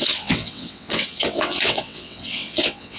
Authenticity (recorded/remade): remade